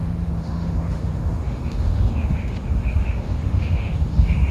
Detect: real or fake fake